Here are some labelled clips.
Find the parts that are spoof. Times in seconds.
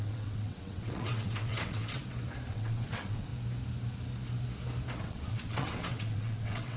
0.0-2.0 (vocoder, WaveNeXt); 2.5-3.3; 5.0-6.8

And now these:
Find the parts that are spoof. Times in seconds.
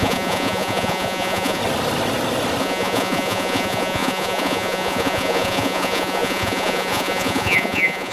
0.0-1.6 (vocoder, Vocos); 2.6-8.1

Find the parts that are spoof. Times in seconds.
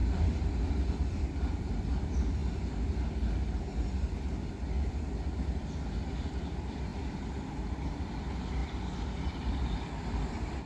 0.0-2.4 (vocoder, BigVGAN v2); 4.5-8.6; 9.8-10.7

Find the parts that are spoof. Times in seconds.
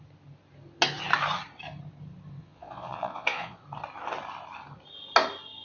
2.4-3.6 (vocoder, Vocos)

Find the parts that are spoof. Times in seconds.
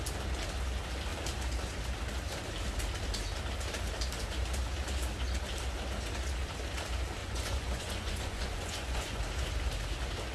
7.2-9.2 (vocoder, Vocos)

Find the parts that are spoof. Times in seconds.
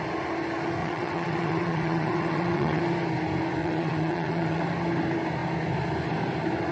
0.8-2.8 (vocoder, WaveNeXt); 3.6-4.6